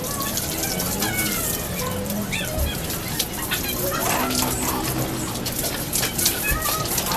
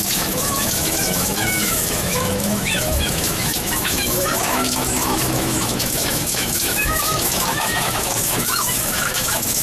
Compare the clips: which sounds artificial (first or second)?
second